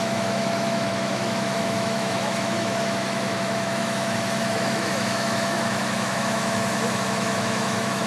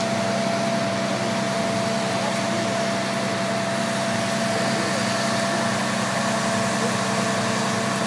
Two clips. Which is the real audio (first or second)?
second